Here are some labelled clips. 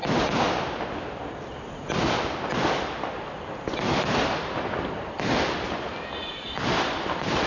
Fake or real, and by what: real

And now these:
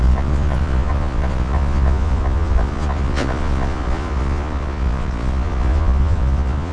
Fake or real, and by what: fake, vocoder, Vocos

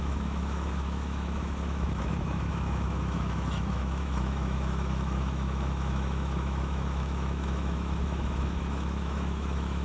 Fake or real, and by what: fake, autoencoder, DAC-VAE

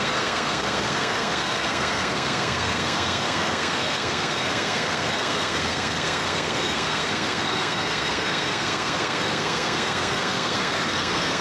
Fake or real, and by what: fake, codec, SNAC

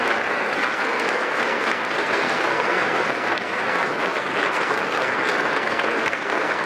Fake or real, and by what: fake, codec, SNAC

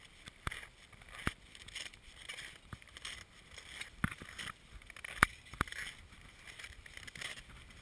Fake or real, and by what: real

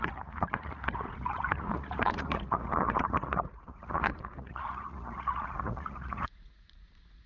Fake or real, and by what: fake, vocoder, Vocos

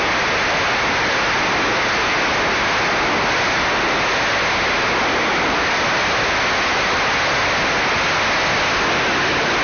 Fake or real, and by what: real